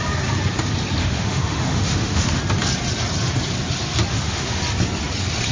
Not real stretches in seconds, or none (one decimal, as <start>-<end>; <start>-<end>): 1.0-2.4; 4.1-4.6